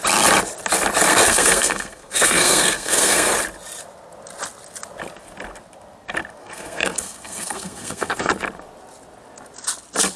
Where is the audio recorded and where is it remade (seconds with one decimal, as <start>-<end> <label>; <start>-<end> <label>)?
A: 0.0-1.1 recorded; 1.1-3.3 remade; 3.3-6.4 recorded; 6.4-8.3 remade; 8.3-10.2 recorded